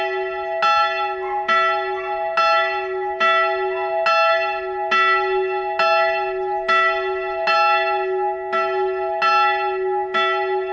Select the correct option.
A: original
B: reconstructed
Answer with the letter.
A